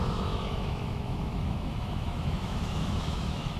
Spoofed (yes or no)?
yes